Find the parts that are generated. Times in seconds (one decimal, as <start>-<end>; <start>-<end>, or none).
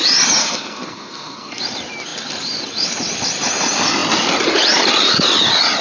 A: 0.4-1.6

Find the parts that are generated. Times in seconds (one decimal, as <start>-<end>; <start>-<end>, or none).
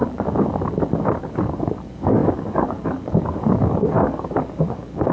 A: 1.2-5.1